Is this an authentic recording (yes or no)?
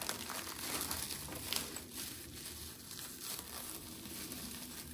yes